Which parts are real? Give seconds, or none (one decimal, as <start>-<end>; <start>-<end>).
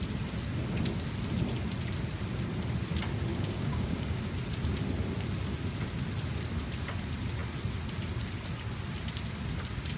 0.0-3.3; 4.2-10.0